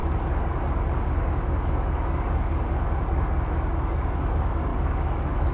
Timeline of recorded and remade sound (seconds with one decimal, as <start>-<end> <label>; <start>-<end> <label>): 0.0-5.5 remade